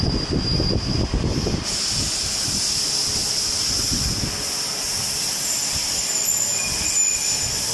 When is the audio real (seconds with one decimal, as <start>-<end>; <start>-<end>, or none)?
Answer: 0.0-7.7